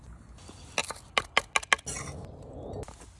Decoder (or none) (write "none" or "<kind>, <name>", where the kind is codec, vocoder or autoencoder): none